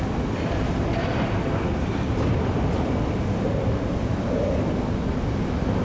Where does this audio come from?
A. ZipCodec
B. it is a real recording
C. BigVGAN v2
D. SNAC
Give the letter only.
B